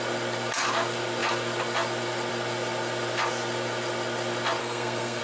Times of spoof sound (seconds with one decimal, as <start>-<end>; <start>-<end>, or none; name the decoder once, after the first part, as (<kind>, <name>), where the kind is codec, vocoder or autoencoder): 4.6-5.2 (codec, SNAC)